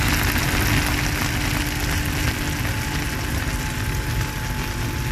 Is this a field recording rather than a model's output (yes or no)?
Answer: yes